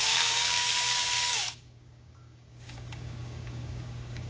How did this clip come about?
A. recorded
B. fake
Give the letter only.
B